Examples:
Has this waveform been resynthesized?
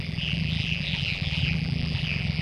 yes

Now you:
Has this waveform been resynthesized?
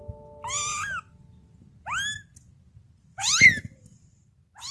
no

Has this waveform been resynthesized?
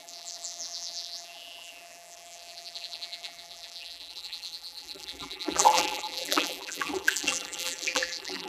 yes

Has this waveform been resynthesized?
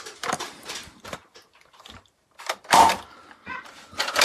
yes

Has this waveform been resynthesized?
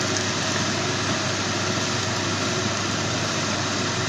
no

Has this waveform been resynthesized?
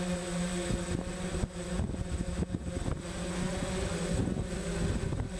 no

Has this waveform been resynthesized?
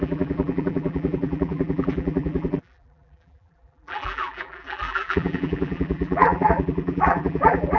yes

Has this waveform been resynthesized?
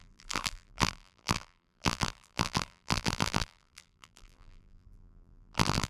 yes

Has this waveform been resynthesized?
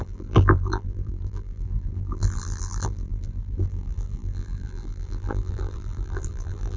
yes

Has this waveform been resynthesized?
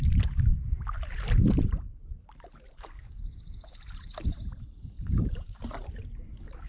yes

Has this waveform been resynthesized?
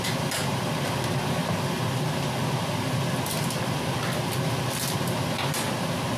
no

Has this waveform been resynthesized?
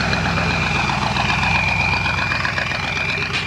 no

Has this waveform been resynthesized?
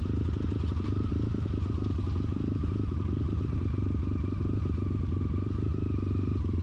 no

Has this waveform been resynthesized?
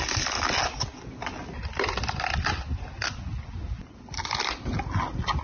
no